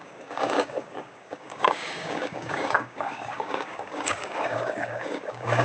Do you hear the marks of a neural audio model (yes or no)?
yes